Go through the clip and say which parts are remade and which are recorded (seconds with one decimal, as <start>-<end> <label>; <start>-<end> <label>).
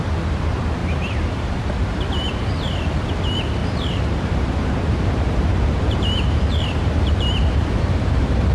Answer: 0.0-0.8 recorded; 0.8-2.0 remade; 2.0-3.6 recorded; 3.6-8.5 remade